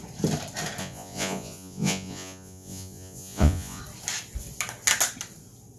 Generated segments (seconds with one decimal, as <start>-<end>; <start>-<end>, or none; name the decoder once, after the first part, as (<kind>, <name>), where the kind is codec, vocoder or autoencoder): 0.8-3.8 (vocoder, Vocos)